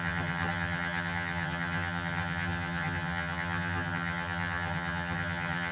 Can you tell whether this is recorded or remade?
remade